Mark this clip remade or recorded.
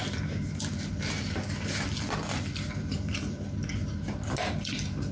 recorded